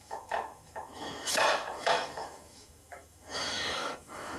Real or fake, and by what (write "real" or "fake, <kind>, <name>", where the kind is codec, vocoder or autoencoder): fake, autoencoder, DAC-VAE